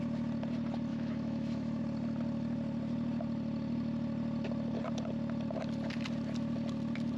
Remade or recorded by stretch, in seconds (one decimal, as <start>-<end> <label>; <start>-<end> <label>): 0.0-0.9 recorded; 0.9-1.8 remade; 1.8-7.2 recorded